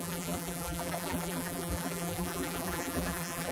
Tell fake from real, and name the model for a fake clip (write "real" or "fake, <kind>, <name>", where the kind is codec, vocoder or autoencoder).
fake, vocoder, BigVGAN v2